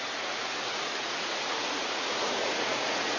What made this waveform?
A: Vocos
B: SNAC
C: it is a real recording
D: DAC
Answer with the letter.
A